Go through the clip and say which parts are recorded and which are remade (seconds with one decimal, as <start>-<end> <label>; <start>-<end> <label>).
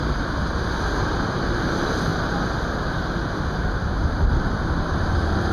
0.0-2.1 remade; 2.1-4.1 recorded; 4.1-5.5 remade